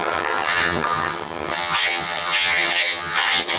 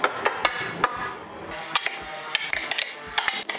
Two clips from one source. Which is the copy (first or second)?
first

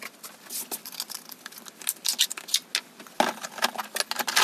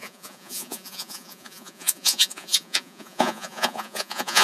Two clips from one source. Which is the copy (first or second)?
second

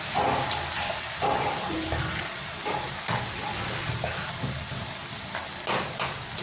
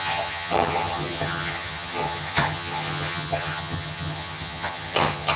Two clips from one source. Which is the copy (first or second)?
second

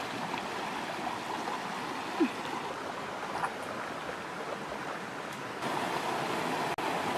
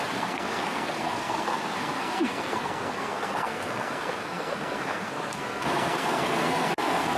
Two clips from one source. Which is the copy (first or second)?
second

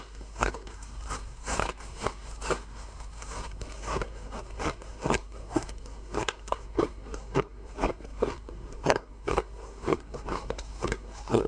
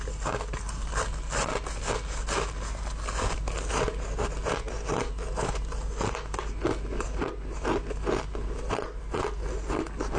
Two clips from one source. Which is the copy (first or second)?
first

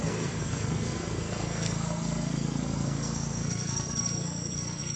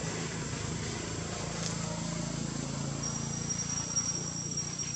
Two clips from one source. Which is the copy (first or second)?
first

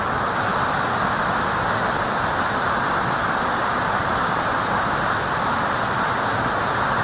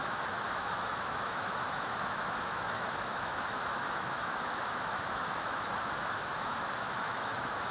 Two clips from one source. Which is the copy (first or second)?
second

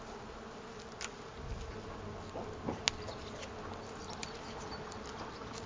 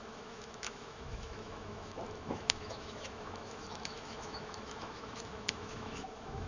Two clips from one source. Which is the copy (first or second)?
second